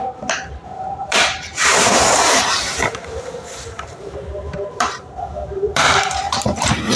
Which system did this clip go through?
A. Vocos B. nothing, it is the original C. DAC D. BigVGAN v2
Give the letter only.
D